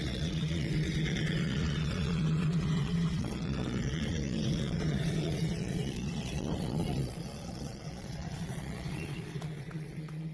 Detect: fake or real fake